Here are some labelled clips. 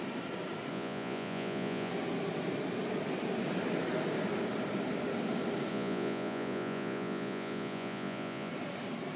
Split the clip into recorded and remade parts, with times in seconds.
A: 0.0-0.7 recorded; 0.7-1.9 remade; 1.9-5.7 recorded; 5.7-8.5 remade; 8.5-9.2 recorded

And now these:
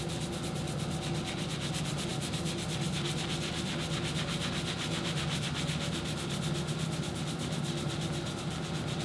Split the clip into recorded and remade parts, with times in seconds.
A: 0.0-9.0 recorded

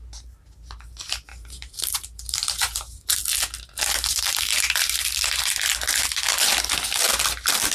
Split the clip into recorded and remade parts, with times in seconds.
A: 0.0-1.3 recorded; 1.3-3.2 remade; 3.2-4.1 recorded; 4.1-5.2 remade; 5.2-7.7 recorded

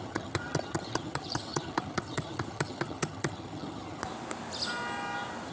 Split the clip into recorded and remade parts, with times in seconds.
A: 0.0-4.0 remade; 4.0-5.5 recorded

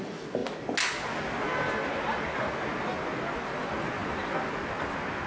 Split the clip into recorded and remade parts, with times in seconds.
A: 0.0-5.3 recorded